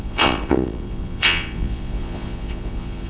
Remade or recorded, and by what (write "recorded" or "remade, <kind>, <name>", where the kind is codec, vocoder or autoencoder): remade, vocoder, Vocos